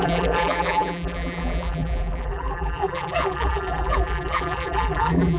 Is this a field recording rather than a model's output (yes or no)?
no